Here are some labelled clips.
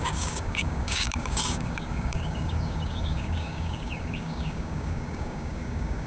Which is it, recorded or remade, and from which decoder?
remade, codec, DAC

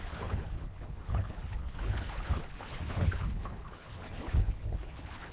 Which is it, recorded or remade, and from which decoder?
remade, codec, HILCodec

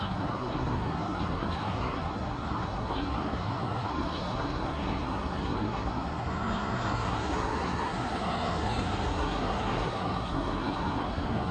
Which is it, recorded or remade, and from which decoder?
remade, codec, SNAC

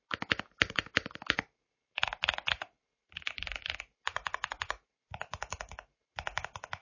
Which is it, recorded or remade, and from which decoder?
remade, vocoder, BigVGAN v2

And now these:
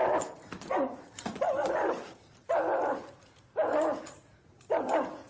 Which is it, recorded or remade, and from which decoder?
recorded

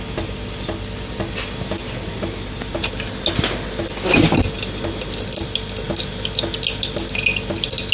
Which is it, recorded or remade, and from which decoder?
recorded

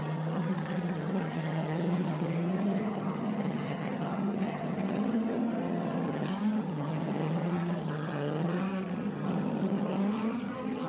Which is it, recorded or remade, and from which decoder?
remade, vocoder, HiFi-GAN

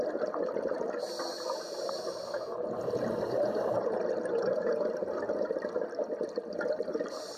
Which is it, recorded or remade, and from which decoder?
recorded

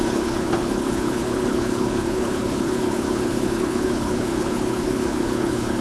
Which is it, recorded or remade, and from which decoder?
remade, codec, HILCodec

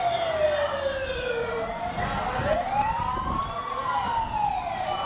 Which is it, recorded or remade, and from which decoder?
recorded